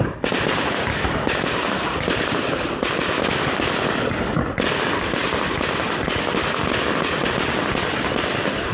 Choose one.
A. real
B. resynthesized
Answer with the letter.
A